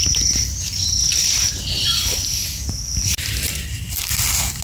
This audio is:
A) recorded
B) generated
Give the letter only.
A